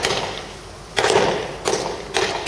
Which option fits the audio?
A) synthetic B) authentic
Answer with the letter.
B